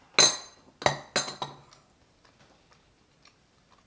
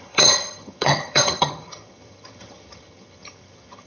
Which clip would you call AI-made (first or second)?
second